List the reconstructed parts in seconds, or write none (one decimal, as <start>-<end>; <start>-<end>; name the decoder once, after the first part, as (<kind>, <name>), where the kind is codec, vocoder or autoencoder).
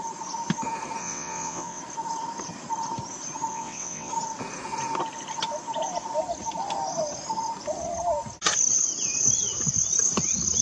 1.0-1.8 (vocoder, WaveNeXt); 3.5-4.1